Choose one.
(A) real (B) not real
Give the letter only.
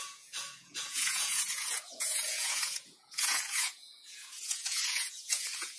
B